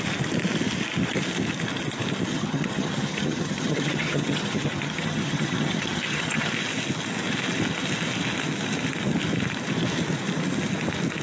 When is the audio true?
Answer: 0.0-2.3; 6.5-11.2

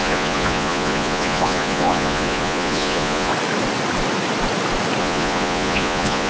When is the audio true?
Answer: 3.3-5.0